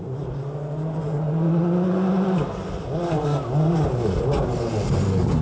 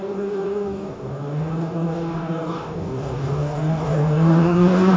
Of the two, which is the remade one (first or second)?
second